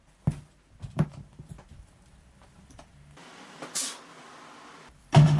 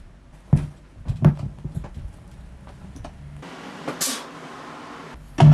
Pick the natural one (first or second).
second